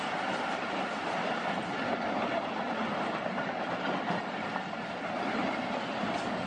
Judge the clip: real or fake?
real